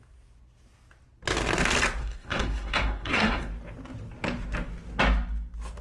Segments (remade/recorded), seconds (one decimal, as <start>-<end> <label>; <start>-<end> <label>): 0.0-2.0 recorded; 2.0-3.5 remade; 3.5-5.8 recorded